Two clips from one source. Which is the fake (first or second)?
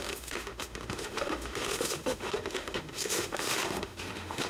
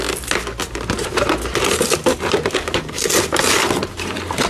first